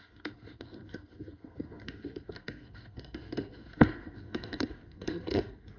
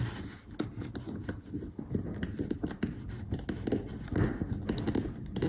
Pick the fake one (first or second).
first